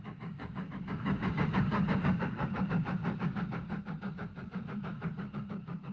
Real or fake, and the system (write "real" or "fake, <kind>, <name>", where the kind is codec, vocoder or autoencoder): fake, codec, DAC